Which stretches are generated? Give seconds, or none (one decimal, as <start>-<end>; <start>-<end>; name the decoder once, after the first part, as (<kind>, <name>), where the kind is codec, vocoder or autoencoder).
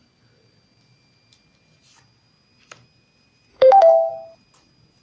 3.5-4.1 (autoencoder, DAC-VAE)